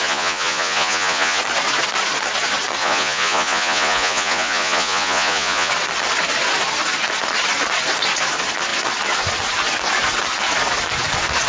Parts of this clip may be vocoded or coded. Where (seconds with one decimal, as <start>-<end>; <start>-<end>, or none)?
0.0-1.4; 2.8-5.7